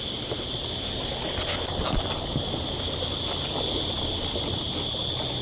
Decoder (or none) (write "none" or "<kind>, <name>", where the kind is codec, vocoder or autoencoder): none